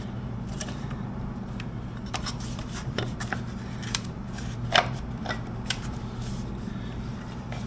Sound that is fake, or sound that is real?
fake